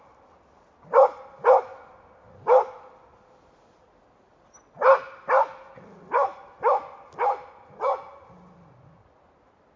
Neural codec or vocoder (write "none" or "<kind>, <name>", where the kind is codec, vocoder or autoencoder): none